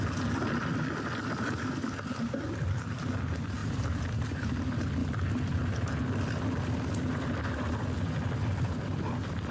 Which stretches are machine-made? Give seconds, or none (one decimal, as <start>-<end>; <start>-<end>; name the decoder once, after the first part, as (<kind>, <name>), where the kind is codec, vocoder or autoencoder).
3.6-4.6 (vocoder, BigVGAN v2)